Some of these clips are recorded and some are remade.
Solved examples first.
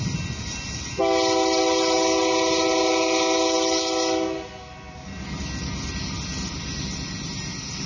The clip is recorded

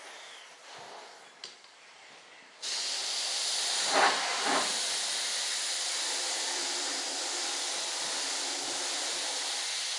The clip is recorded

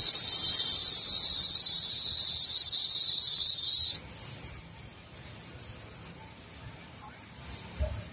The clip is recorded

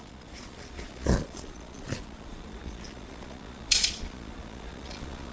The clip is remade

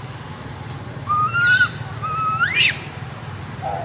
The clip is recorded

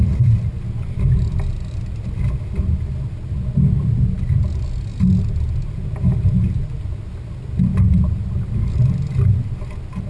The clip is recorded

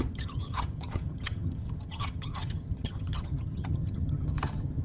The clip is remade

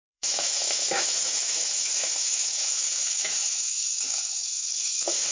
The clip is remade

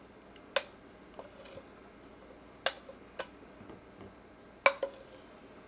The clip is recorded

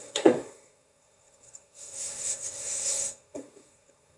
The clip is remade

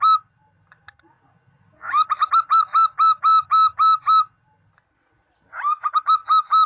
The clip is recorded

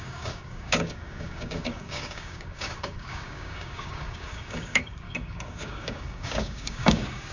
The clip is remade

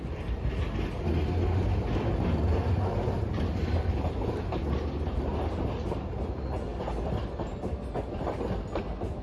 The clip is recorded